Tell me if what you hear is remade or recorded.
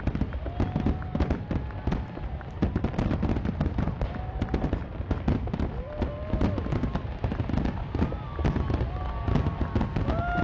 recorded